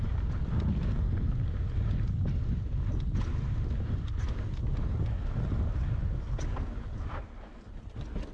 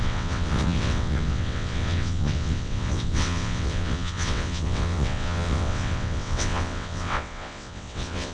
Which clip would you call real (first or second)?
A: first